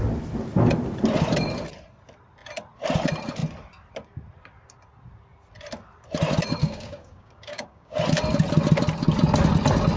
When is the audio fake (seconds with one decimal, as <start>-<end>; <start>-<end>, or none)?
6.6-8.0